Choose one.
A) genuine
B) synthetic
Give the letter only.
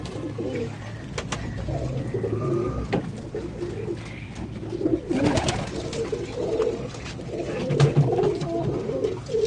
A